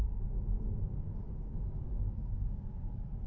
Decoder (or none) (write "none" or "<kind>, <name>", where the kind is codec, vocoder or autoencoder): none